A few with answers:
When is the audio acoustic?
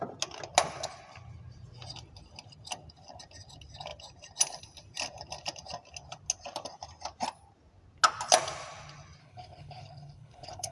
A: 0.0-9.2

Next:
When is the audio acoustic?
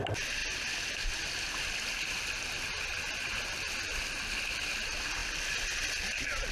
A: 0.0-6.5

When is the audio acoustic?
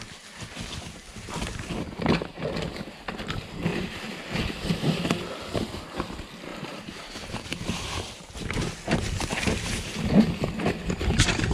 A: 0.0-3.7; 4.4-6.5; 8.7-11.5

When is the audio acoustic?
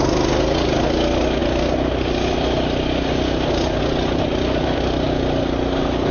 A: 0.0-6.1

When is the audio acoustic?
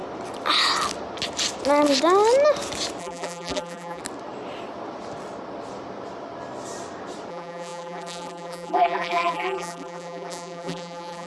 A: 0.0-3.0; 4.0-7.3